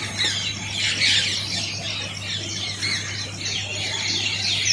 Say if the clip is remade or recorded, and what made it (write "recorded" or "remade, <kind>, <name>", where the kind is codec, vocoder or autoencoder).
recorded